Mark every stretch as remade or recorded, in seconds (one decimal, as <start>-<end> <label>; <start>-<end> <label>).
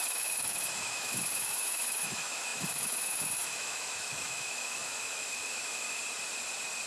0.0-6.0 remade; 6.0-6.9 recorded